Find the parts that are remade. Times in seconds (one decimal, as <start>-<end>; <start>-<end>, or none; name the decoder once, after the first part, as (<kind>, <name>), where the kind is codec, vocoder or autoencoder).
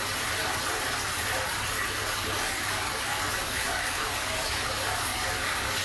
2.0-5.8 (codec, DAC)